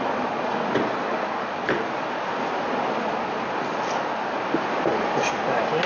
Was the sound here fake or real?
real